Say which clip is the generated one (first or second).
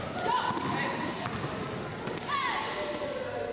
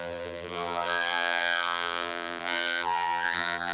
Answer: second